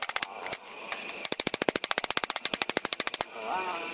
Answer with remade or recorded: recorded